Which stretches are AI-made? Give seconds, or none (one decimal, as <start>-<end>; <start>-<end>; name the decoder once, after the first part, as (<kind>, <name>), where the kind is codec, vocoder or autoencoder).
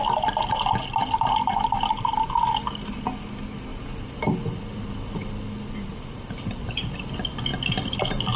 none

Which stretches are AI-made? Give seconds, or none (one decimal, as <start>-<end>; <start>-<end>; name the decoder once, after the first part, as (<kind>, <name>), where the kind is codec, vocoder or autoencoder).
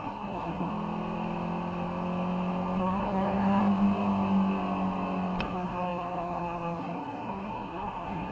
0.0-0.7 (codec, SNAC); 2.8-3.6; 5.4-8.3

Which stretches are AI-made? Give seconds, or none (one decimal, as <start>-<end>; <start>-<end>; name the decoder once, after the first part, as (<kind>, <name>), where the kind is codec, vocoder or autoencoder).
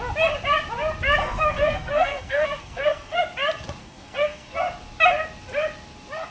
1.2-3.2 (codec, SNAC); 3.8-4.5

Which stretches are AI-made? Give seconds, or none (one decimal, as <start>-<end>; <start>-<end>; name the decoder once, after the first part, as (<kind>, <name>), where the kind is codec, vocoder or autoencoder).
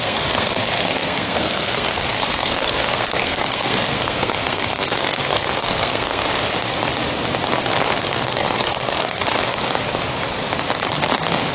0.0-6.2 (codec, SNAC); 7.9-9.2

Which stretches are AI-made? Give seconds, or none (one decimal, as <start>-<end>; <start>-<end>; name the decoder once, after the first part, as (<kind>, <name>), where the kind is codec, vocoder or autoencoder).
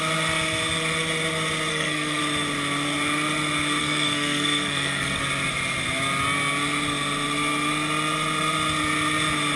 1.7-2.2 (codec, SNAC); 3.8-5.2